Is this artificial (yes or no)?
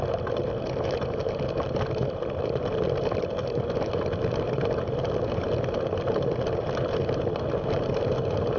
no